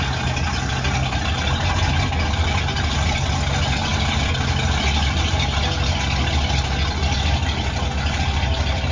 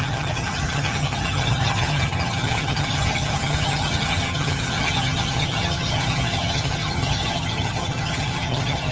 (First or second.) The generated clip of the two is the second